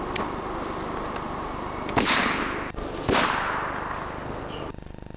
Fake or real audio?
real